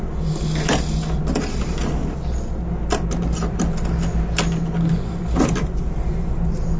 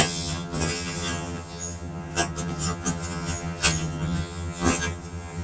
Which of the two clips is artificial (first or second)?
second